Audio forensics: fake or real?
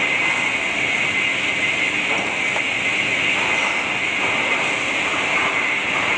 real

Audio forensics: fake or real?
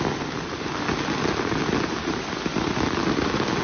real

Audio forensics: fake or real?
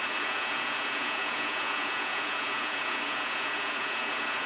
fake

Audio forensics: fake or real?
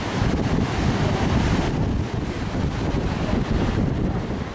real